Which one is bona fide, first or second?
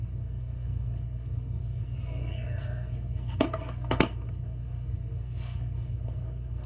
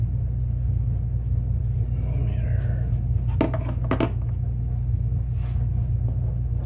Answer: second